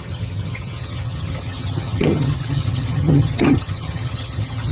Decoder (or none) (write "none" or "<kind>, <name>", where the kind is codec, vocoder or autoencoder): vocoder, HiFi-GAN